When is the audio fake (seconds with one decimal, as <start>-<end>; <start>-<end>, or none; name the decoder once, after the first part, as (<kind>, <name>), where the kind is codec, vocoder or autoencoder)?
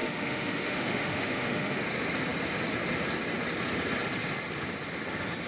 0.0-1.8 (autoencoder, DAC-VAE)